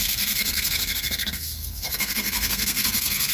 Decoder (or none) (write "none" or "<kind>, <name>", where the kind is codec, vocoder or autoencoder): codec, SNAC